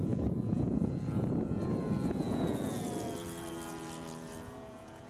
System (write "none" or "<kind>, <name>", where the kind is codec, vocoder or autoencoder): vocoder, Vocos